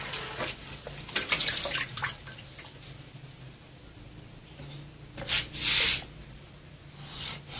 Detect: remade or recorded recorded